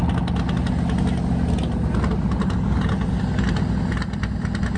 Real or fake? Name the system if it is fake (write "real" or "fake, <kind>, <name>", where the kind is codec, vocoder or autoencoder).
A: real